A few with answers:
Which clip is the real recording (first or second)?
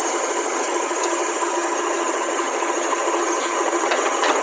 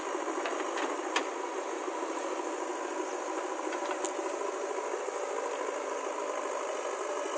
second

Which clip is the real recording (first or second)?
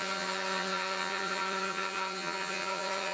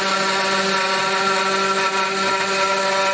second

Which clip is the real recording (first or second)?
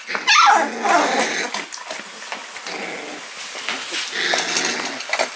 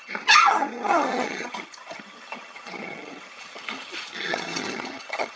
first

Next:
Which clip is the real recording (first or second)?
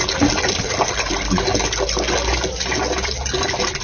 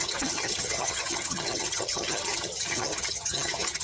first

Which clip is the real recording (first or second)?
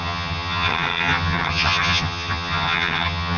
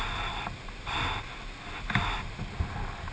second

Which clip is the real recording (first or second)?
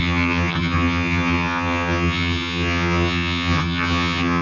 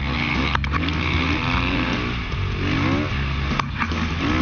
second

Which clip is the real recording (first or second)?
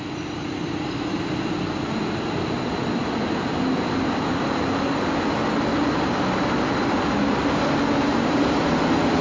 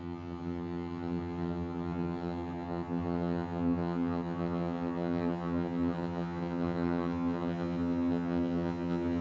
first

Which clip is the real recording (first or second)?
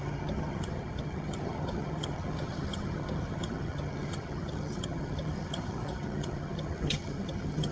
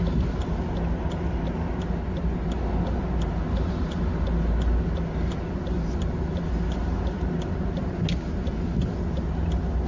second